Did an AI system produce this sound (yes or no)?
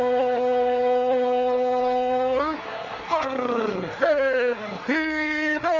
yes